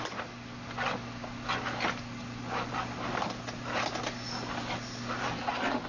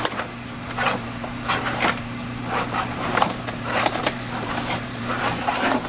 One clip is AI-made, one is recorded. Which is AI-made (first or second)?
second